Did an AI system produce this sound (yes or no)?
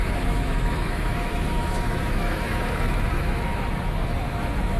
yes